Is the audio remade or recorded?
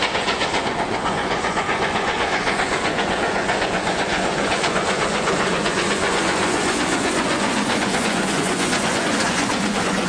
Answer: remade